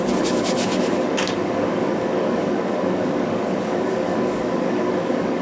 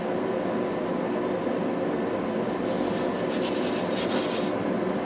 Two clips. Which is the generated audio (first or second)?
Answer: first